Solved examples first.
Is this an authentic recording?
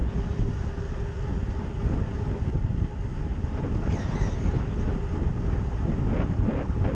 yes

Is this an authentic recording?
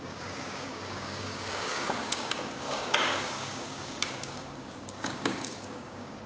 no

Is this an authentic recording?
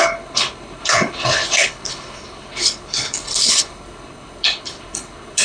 no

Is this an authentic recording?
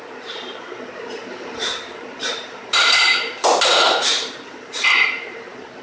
no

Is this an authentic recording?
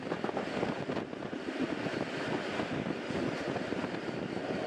yes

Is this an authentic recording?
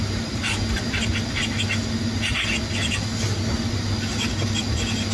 yes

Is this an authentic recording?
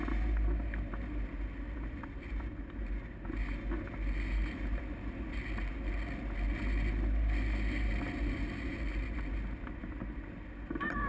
yes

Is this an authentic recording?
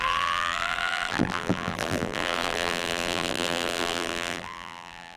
no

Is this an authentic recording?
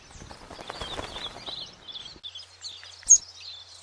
yes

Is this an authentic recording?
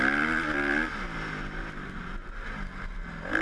yes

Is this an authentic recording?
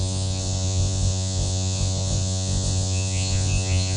no